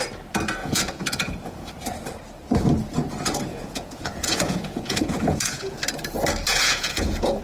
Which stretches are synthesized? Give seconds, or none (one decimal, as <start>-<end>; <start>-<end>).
0.6-1.7; 3.5-5.8; 6.5-7.4